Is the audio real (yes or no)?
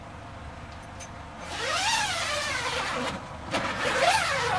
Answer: yes